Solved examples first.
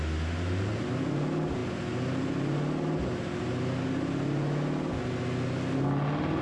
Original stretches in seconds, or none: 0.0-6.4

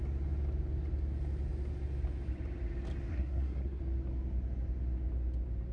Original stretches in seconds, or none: 0.0-3.1; 3.8-5.7

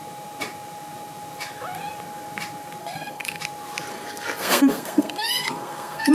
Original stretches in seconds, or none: 0.0-2.8; 3.4-3.9

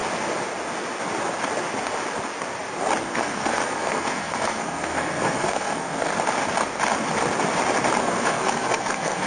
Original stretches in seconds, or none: 0.0-3.0; 6.1-8.0